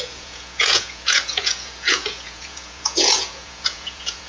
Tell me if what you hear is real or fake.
fake